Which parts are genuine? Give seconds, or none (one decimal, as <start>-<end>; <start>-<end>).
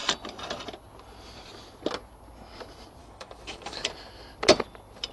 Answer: 0.0-3.0; 3.8-5.1